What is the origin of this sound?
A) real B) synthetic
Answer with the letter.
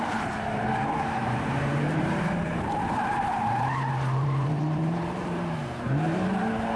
B